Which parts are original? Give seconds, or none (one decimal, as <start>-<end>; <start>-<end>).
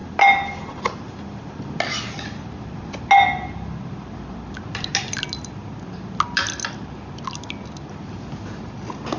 0.0-9.2